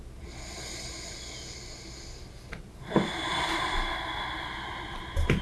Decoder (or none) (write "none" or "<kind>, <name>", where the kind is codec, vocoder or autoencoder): none